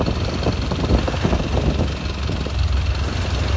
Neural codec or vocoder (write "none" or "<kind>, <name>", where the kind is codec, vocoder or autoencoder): none